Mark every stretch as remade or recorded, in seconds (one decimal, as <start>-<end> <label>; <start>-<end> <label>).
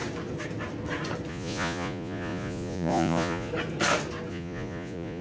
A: 0.0-1.3 recorded; 1.3-3.5 remade; 3.5-4.3 recorded; 4.3-5.2 remade